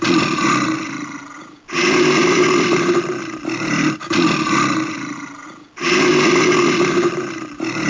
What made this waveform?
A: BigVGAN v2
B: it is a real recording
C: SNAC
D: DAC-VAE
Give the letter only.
A